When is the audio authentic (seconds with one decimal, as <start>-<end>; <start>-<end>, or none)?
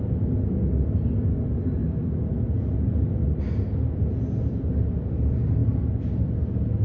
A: 0.0-6.8